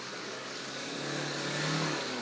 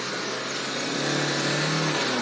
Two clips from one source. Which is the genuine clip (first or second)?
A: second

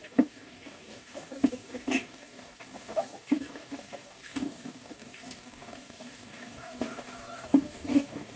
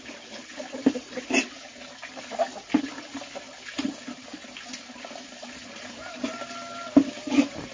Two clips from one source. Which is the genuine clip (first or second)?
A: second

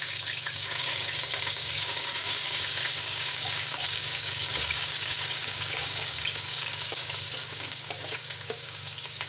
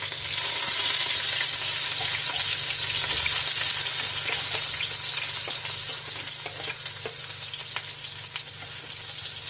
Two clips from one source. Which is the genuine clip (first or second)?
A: second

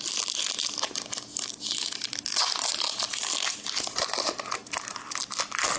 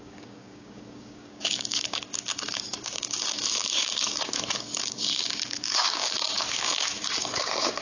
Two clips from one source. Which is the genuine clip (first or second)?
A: first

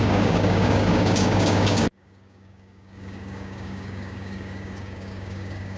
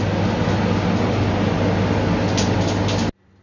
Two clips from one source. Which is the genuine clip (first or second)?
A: second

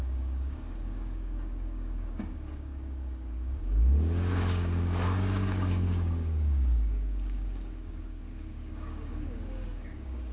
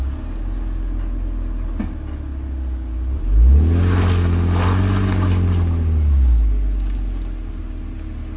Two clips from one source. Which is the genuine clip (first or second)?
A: second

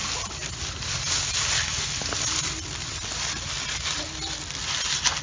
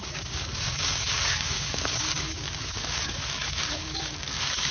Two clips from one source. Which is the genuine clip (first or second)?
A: first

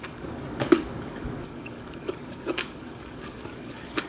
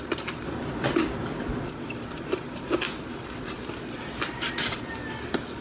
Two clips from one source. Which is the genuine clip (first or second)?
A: second